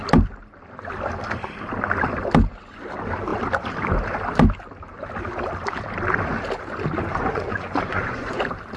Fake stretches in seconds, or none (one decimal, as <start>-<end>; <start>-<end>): 7.1-8.4